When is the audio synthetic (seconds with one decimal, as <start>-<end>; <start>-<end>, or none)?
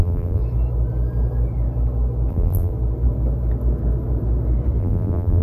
0.0-0.4; 2.3-2.7; 4.8-5.4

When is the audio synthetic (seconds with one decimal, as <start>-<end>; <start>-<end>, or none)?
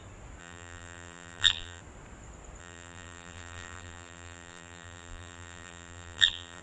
0.4-1.8; 2.6-6.6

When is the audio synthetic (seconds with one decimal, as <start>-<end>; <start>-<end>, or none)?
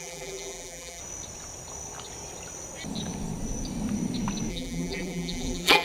0.0-1.0; 4.5-5.8